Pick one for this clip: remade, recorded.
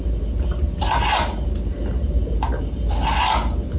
recorded